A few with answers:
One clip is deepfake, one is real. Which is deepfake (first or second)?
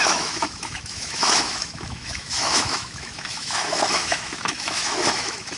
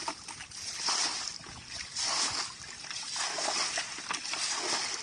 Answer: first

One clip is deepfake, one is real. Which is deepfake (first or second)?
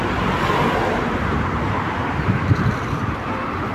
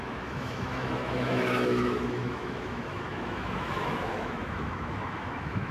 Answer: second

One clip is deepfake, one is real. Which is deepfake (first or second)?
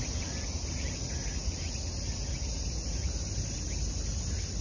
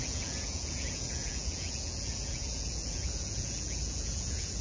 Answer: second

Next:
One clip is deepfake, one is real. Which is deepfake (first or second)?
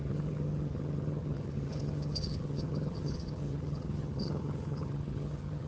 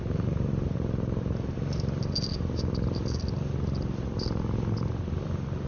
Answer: first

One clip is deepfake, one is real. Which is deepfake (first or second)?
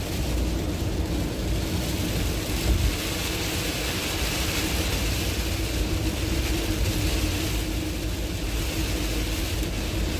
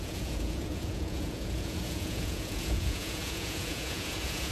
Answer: second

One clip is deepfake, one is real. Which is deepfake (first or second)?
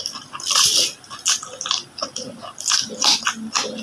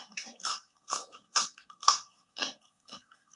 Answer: second